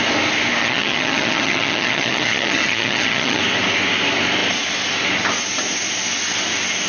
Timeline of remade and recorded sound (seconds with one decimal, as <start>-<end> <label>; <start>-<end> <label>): 0.0-0.6 recorded; 0.6-3.4 remade; 3.4-6.9 recorded